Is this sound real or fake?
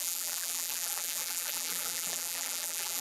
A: fake